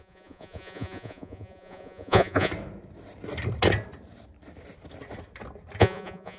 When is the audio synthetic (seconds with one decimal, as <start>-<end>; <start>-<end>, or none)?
0.0-2.5; 5.8-6.4